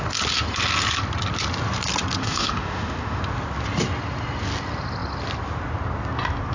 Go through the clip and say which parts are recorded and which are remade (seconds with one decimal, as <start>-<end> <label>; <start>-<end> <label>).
0.0-2.2 recorded; 2.2-3.2 remade; 3.2-6.5 recorded